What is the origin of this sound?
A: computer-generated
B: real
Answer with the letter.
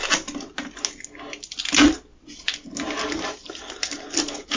B